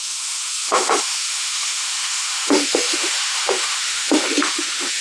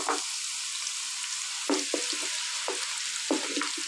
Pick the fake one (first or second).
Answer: first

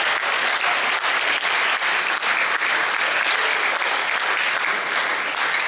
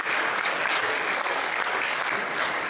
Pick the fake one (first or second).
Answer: second